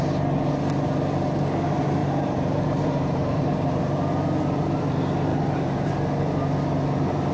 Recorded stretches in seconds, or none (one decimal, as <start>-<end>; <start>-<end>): 0.0-2.0; 3.8-5.3; 5.9-7.3